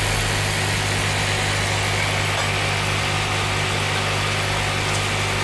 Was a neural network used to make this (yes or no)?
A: no